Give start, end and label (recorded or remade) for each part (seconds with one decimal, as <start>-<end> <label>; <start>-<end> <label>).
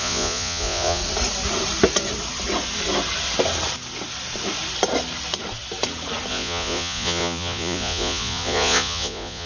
0.0-1.0 remade; 1.0-6.3 recorded; 6.3-9.5 remade